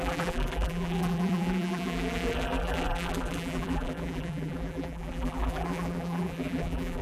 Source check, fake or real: fake